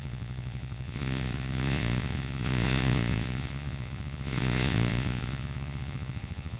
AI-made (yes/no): yes